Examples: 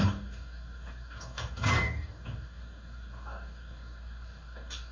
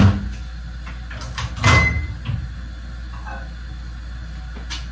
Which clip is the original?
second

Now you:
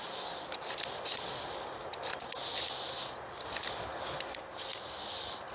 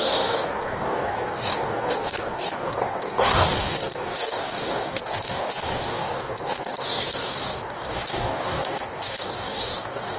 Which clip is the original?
first